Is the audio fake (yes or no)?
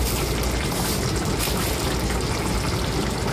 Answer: no